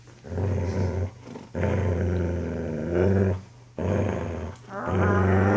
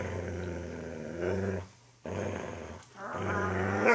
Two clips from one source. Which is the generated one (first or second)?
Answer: second